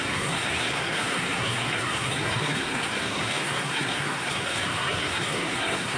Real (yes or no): no